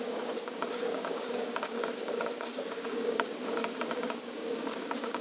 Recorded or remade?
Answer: remade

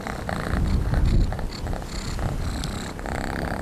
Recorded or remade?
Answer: recorded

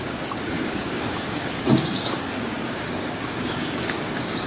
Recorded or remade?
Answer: remade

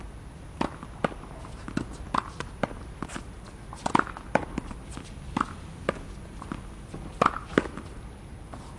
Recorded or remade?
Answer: recorded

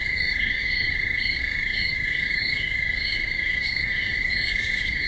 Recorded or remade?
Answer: remade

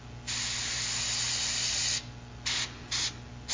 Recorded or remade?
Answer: recorded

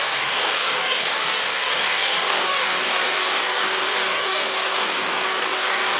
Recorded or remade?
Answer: remade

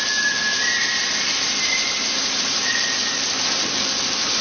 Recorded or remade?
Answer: recorded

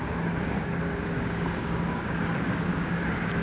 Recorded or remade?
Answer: remade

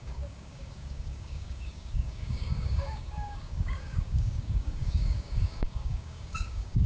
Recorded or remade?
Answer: remade